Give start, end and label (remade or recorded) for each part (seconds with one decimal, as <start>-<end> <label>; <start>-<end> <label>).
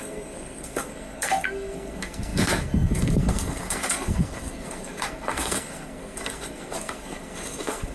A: 0.0-7.9 remade